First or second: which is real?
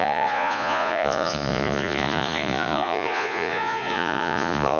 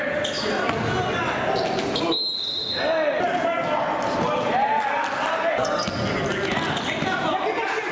second